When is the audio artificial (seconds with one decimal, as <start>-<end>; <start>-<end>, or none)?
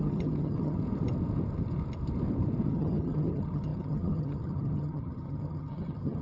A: 0.0-0.8; 2.7-6.2